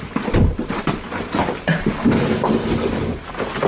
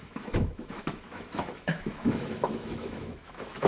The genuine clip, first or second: first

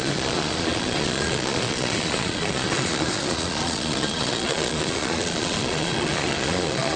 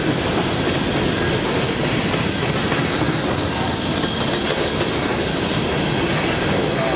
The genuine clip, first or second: second